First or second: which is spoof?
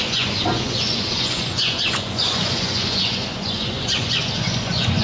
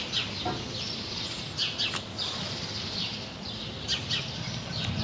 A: first